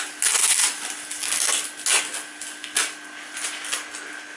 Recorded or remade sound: recorded